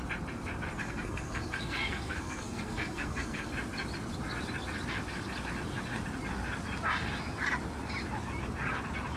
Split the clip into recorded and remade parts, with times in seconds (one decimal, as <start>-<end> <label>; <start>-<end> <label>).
0.0-0.8 recorded; 0.8-3.5 remade; 3.5-9.2 recorded